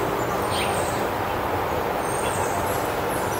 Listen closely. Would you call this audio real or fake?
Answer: real